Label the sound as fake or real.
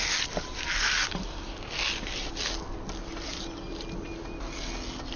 real